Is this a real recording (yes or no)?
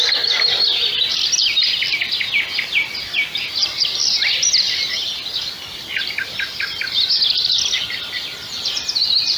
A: yes